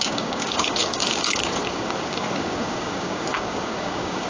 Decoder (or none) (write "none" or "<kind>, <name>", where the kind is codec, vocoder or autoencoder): codec, DAC